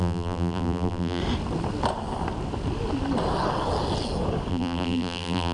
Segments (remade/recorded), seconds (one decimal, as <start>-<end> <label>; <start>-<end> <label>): 0.0-1.2 remade; 1.2-4.5 recorded; 4.5-5.5 remade